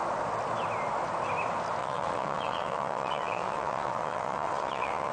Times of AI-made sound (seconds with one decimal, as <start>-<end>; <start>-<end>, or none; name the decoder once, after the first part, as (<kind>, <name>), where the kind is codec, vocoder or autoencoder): 1.8-5.1 (vocoder, WaveNeXt)